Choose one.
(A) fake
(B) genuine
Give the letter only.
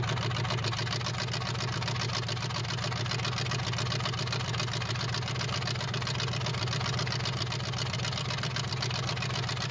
B